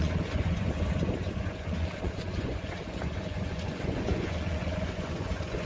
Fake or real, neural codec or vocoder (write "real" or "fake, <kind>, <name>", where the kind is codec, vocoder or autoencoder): fake, vocoder, Vocos